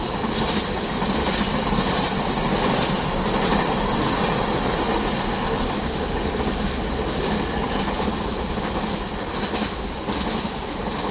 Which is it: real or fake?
real